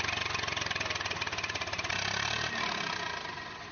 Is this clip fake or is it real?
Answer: real